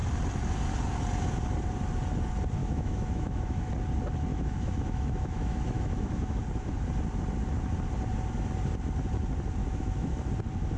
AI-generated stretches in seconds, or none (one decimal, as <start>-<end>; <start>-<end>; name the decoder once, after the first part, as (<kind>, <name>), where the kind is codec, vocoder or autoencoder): 2.6-3.7 (autoencoder, DAC-VAE); 4.3-6.4; 9.6-10.3